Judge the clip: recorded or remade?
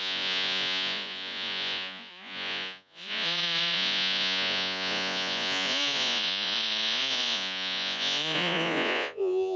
remade